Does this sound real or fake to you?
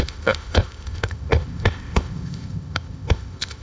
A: fake